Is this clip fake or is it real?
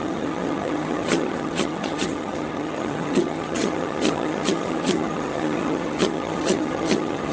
fake